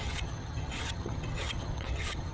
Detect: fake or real fake